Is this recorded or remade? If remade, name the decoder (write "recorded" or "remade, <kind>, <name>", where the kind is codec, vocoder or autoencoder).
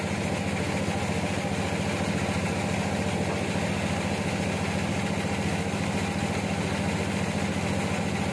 recorded